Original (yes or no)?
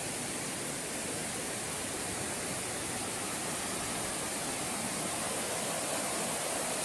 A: no